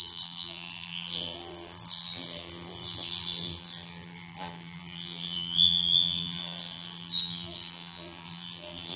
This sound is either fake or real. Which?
fake